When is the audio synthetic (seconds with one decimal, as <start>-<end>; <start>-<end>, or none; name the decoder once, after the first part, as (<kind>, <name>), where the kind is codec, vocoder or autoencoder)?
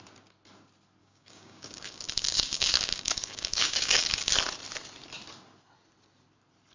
1.0-4.3 (codec, DAC)